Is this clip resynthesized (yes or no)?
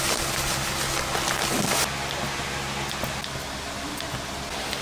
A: no